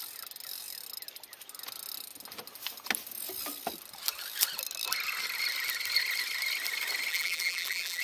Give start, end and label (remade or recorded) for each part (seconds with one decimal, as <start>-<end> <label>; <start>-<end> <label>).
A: 0.0-7.1 recorded; 7.1-8.0 remade